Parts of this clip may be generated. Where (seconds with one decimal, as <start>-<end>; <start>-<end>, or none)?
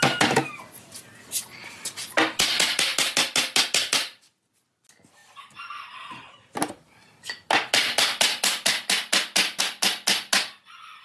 none